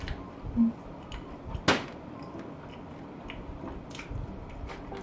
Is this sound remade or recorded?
recorded